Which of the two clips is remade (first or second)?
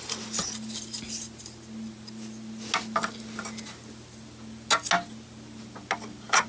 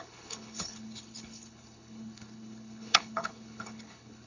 second